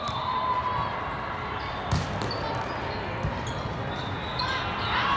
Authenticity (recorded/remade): recorded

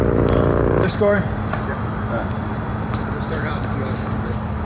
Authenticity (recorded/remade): remade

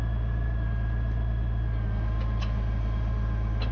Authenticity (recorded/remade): recorded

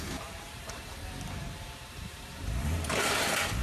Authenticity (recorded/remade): remade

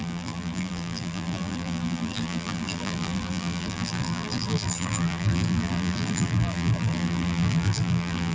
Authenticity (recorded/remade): remade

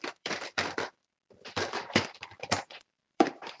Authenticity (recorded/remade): remade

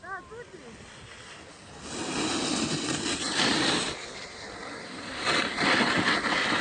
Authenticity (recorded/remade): recorded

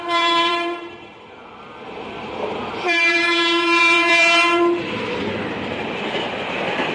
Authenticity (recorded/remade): remade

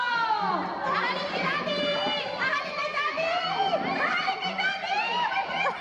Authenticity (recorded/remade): remade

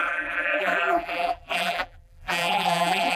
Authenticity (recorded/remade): remade